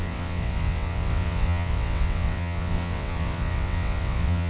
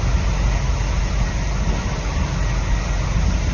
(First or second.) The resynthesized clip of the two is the first